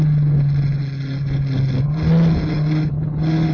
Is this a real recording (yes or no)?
yes